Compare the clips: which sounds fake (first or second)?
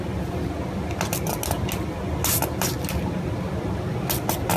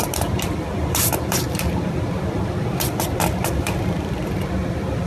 second